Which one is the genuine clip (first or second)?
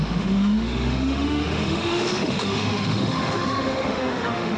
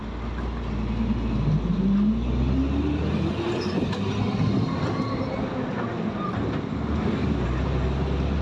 second